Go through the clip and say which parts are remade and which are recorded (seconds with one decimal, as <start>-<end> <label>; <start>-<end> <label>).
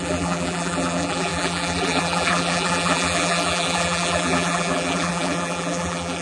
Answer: 0.0-6.2 remade